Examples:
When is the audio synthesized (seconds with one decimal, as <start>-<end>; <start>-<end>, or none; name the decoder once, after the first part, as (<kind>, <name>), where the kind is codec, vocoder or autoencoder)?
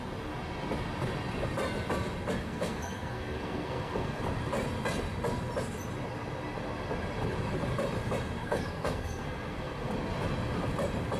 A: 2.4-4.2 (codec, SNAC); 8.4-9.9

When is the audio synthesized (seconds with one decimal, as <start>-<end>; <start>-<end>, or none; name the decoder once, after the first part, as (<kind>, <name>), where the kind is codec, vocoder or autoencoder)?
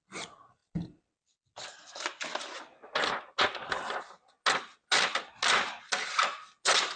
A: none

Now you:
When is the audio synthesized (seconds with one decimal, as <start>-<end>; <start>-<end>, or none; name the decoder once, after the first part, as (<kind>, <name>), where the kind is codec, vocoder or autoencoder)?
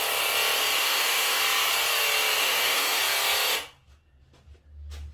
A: 0.8-1.4 (autoencoder, DAC-VAE); 2.4-3.0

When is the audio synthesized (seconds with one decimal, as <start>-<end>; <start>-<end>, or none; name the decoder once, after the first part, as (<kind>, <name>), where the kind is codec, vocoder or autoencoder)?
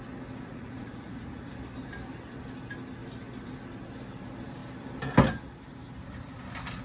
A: 0.5-1.5 (vocoder, Vocos)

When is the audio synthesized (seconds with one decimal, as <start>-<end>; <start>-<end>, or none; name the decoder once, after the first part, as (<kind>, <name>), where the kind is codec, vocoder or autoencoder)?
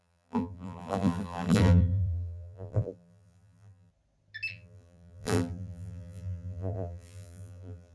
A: 0.0-3.9 (vocoder, BigVGAN v2); 4.5-7.9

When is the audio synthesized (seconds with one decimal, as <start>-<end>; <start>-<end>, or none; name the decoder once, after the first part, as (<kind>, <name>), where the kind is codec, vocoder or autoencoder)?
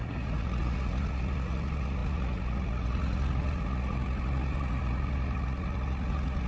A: 0.0-6.5 (vocoder, Vocos)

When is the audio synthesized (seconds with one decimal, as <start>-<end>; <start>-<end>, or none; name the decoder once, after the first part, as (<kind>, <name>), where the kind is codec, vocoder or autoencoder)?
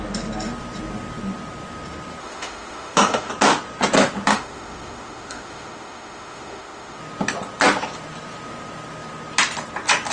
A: 2.2-3.3 (autoencoder, DAC-VAE); 4.3-7.0